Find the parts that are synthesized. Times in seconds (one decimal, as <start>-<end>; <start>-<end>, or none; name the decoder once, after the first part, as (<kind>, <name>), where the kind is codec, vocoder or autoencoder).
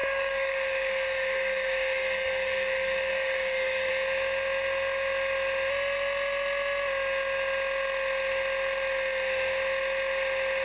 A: 0.0-3.9 (codec, DAC)